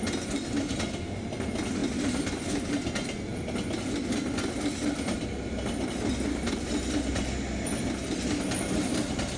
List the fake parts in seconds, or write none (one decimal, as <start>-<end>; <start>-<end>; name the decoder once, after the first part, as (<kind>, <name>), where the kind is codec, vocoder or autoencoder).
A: none

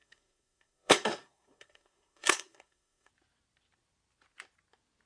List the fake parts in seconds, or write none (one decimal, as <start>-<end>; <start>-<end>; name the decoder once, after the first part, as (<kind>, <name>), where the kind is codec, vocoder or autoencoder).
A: 0.0-3.1 (codec, SNAC)

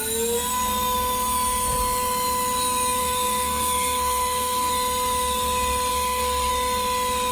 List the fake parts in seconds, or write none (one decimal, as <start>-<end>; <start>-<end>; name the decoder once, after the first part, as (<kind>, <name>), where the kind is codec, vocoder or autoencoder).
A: 3.0-4.7 (codec, SNAC); 5.9-6.5

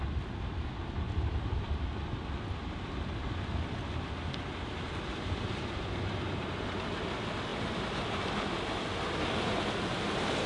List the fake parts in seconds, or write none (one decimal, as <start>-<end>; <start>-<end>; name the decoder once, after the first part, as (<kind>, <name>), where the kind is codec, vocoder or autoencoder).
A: none

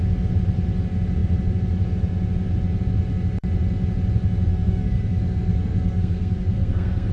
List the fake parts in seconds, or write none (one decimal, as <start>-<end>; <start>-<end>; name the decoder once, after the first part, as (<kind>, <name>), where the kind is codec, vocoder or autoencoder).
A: 4.5-7.1 (codec, SNAC)